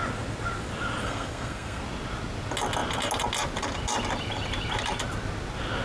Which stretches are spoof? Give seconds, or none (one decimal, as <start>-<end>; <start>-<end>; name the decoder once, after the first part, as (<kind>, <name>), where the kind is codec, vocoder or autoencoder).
1.0-1.8 (codec, SNAC)